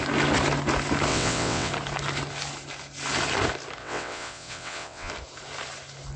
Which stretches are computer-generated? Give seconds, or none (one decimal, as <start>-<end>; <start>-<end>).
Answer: 1.1-1.7; 3.8-5.1